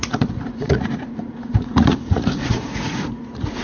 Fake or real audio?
fake